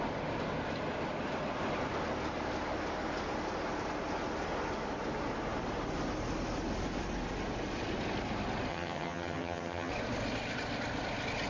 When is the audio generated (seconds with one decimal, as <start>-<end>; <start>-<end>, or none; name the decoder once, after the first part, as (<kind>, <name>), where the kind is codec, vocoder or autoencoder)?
8.7-9.9 (vocoder, HiFi-GAN)